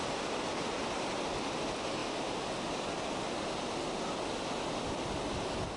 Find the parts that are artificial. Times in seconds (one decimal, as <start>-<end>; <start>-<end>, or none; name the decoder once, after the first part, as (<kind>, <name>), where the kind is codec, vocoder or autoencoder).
none